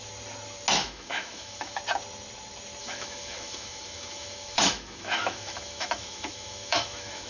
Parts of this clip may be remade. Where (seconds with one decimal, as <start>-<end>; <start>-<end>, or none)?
0.8-1.8; 2.8-7.3